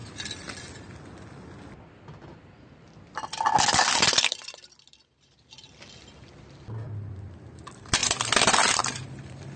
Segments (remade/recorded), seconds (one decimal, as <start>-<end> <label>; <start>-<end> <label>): 0.0-4.0 recorded; 4.0-8.0 remade; 8.0-8.8 recorded; 8.8-9.6 remade